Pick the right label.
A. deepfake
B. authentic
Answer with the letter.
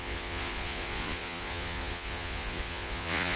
A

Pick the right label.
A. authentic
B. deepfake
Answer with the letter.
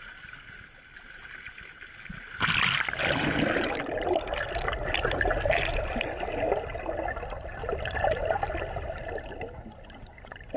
A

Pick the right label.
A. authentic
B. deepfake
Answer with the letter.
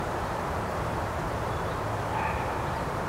B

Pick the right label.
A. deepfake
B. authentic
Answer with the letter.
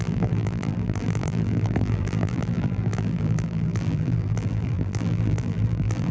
A